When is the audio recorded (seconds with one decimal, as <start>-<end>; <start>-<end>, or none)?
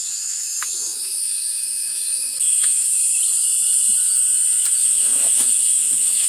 3.0-4.7